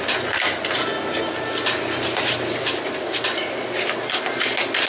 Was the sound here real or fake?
real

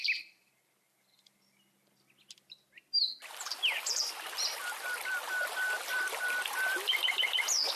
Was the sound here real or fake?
real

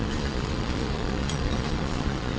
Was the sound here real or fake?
fake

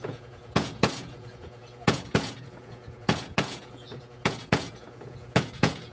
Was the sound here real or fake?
fake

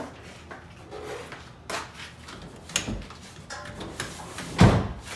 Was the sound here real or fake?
real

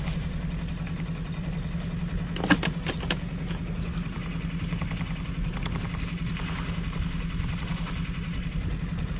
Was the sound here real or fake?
real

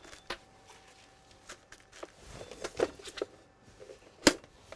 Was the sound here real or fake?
real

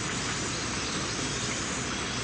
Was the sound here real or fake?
real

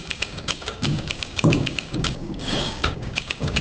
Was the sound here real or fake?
fake